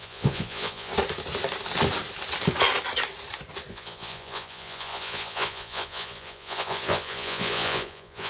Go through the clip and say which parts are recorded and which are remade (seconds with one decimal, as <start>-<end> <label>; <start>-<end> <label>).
0.0-0.9 remade; 0.9-3.7 recorded; 3.7-8.3 remade